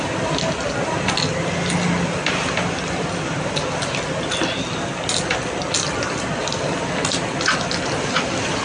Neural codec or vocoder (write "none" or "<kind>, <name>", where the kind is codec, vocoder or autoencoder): none